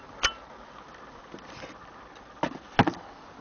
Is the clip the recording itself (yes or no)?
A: yes